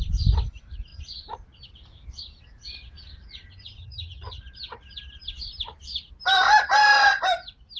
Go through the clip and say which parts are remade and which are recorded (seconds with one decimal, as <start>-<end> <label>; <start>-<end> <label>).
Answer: 0.0-3.8 recorded; 3.8-4.4 remade; 4.4-7.8 recorded